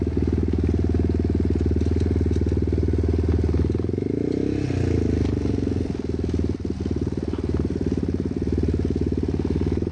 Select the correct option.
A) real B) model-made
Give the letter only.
A